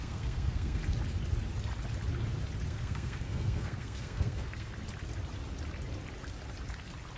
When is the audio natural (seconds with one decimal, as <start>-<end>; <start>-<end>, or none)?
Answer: 0.8-2.7; 4.7-7.2